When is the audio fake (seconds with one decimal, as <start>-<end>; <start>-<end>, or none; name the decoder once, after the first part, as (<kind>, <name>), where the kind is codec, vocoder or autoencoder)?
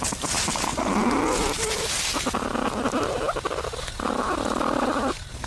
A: none